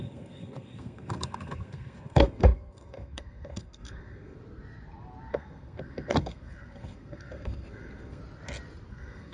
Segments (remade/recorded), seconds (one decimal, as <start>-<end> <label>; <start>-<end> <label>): 0.0-4.4 remade; 4.4-5.3 recorded; 5.3-8.2 remade; 8.2-8.9 recorded; 8.9-9.3 remade